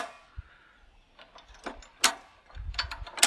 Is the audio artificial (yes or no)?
no